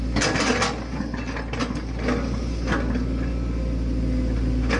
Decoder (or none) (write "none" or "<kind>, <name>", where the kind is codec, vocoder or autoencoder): none